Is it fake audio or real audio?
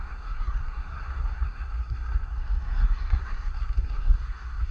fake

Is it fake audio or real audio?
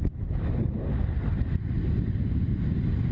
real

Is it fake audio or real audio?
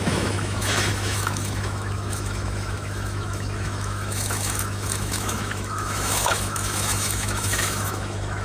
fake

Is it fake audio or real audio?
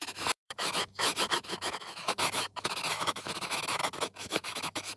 fake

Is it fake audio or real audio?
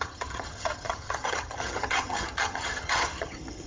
fake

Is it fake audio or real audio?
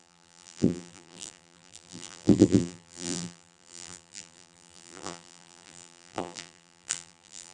fake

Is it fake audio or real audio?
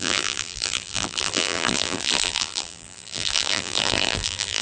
fake